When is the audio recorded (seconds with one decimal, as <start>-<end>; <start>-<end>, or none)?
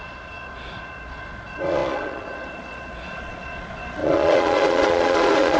none